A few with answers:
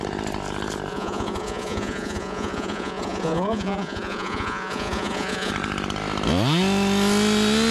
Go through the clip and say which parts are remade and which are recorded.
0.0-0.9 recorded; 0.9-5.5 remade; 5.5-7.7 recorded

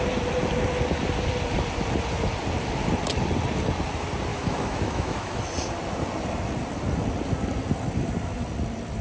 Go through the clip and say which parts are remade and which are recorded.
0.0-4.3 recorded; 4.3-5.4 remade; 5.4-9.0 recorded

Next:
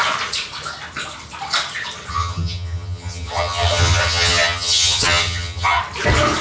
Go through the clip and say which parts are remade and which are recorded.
0.0-2.1 recorded; 2.1-5.8 remade; 5.8-6.4 recorded